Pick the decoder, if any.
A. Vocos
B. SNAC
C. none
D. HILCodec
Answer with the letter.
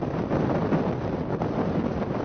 C